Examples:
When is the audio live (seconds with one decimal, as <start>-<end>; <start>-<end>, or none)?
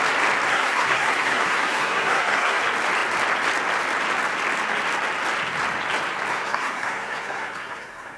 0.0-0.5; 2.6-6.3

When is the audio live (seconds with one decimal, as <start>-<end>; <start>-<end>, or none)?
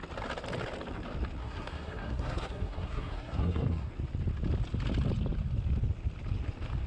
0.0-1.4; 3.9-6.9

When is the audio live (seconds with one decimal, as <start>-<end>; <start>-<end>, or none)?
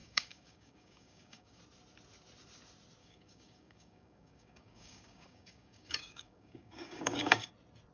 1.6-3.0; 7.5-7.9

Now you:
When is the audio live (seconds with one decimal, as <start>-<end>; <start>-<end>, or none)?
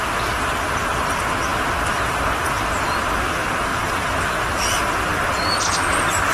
0.0-6.3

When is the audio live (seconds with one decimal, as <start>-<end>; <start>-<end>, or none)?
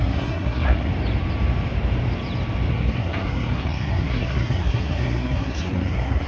0.9-2.7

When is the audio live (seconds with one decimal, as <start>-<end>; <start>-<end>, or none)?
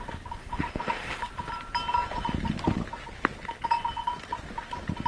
0.0-0.4; 1.2-5.1